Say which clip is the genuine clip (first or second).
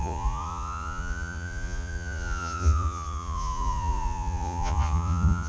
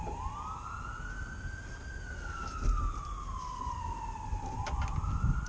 second